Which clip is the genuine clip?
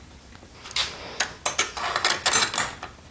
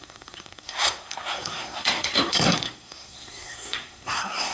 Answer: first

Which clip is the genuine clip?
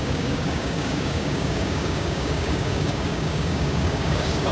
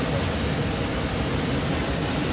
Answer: second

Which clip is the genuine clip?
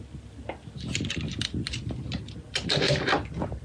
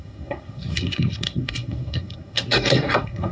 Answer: first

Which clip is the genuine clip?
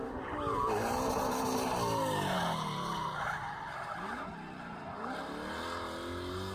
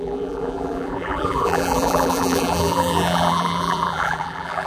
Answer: first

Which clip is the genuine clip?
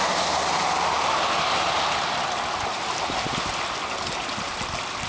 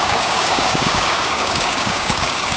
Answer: first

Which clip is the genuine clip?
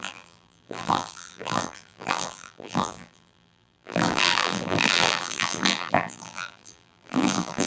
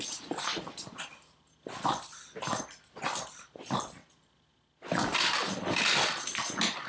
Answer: second